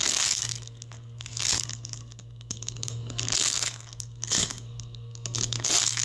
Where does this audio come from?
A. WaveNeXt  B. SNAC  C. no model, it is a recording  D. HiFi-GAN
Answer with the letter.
B